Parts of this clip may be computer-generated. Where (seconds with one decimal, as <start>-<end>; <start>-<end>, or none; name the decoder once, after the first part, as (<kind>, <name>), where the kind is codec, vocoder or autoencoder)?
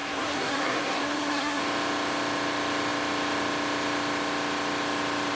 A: 0.0-1.6 (codec, SNAC)